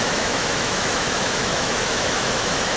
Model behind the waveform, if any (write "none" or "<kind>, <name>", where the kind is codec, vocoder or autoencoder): autoencoder, DAC-VAE